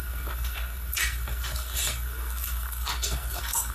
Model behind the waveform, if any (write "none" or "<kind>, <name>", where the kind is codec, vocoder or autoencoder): codec, SNAC